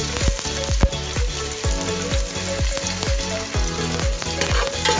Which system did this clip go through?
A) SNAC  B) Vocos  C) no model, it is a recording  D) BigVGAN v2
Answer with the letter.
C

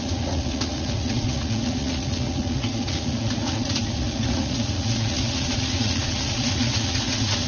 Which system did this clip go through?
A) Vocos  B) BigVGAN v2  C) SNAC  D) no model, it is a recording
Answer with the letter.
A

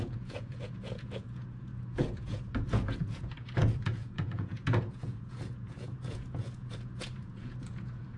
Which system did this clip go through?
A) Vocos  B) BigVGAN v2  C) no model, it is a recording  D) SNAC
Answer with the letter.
A